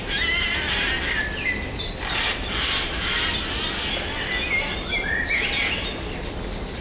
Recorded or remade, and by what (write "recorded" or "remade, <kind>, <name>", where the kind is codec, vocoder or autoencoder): recorded